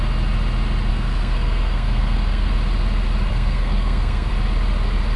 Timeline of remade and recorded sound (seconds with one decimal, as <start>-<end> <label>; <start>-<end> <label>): 0.0-0.9 recorded; 0.9-2.5 remade; 2.5-3.3 recorded; 3.3-4.3 remade; 4.3-5.2 recorded